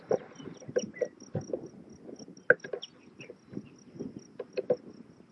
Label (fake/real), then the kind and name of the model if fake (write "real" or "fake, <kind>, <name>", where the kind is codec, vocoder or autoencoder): real